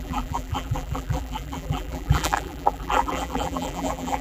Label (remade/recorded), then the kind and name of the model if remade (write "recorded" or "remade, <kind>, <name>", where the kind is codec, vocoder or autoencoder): remade, vocoder, BigVGAN v2